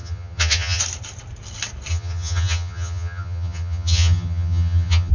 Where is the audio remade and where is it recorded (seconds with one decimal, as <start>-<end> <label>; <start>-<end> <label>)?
0.0-0.8 remade; 0.8-1.9 recorded; 1.9-5.1 remade